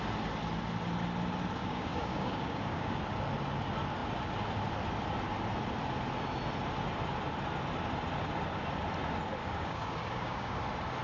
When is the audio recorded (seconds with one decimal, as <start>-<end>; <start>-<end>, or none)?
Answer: 0.0-1.6; 3.0-9.4; 10.6-11.0